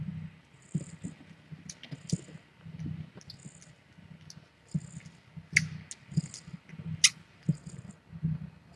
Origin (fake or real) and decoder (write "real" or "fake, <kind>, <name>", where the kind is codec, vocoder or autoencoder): real